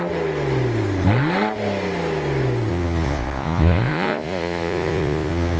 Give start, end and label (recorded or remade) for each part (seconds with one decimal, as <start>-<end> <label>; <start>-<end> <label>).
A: 0.0-2.7 recorded; 2.7-5.6 remade